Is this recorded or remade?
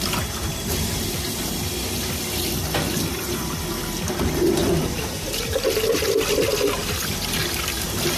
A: remade